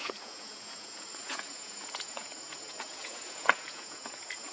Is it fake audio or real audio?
fake